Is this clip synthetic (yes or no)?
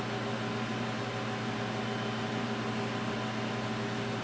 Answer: no